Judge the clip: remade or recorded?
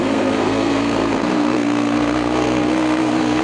remade